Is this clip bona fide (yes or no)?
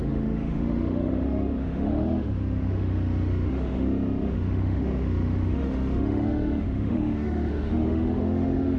no